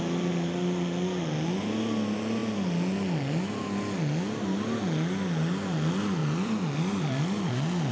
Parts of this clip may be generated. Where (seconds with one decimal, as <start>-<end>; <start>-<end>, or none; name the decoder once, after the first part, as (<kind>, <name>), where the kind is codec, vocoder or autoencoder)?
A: 6.2-7.5 (vocoder, BigVGAN v2)